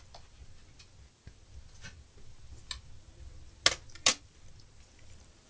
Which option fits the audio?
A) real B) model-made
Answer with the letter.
A